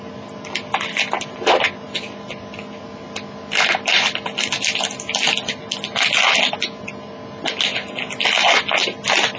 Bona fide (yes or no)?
yes